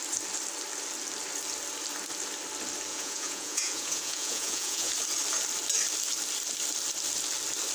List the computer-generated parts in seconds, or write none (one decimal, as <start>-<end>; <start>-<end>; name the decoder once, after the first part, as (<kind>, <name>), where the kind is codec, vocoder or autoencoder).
2.9-4.9 (vocoder, Vocos)